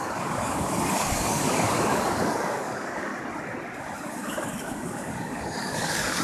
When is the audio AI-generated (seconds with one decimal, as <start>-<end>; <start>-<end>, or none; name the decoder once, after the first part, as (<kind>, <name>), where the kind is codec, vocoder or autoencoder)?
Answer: 0.0-3.1 (codec, DAC); 4.1-6.2